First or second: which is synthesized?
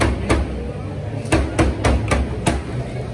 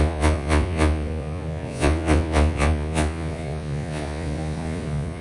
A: second